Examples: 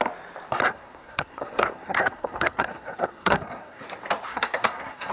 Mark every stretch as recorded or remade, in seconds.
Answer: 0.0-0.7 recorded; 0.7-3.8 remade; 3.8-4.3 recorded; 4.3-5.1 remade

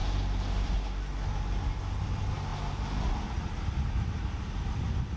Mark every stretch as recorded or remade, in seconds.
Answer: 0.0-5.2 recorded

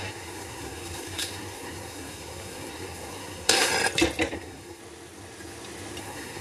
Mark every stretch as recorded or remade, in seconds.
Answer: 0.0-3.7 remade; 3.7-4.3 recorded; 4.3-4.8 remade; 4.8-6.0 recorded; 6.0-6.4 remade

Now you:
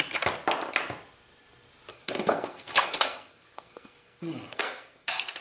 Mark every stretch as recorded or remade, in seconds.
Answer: 0.0-1.9 recorded; 1.9-5.4 remade

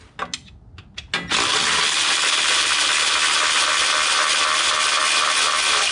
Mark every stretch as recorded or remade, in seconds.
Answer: 0.0-5.9 recorded

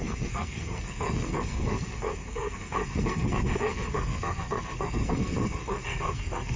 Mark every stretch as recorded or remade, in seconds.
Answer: 0.0-6.6 remade

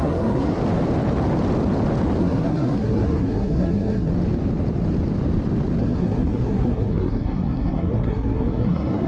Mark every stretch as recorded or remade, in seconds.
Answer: 0.0-0.6 remade; 0.6-2.2 recorded; 2.2-4.1 remade; 4.1-5.8 recorded; 5.8-9.1 remade

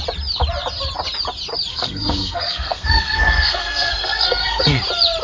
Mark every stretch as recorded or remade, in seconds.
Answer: 0.0-1.7 recorded; 1.7-4.8 remade; 4.8-5.2 recorded